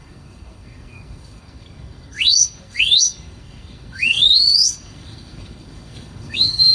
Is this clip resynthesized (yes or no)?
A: yes